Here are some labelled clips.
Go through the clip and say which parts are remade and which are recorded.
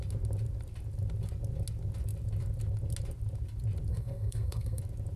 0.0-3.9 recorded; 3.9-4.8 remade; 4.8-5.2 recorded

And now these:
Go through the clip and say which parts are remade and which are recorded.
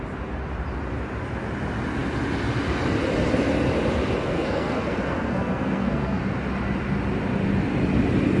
0.0-4.2 recorded; 4.2-6.2 remade; 6.2-8.4 recorded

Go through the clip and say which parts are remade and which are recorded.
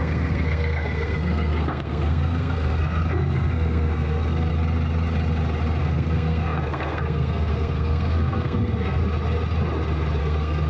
0.0-4.5 remade; 4.5-5.8 recorded; 5.8-9.0 remade; 9.0-10.2 recorded; 10.2-10.7 remade